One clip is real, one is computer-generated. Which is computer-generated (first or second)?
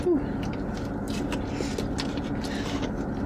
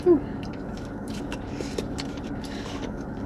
second